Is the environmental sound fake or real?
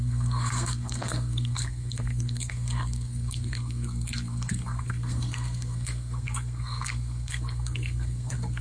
fake